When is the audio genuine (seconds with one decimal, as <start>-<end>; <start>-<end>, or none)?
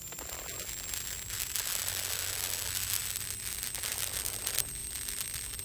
0.0-5.6